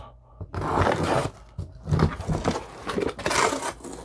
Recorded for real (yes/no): yes